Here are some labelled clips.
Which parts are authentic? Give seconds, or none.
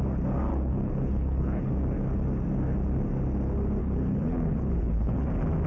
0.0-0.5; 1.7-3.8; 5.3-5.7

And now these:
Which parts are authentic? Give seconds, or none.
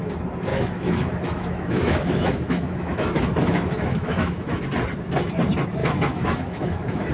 0.0-0.5; 4.6-5.8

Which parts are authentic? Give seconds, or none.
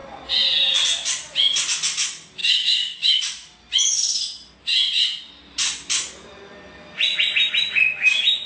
0.0-2.4; 3.2-8.5